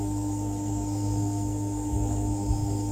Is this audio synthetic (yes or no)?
yes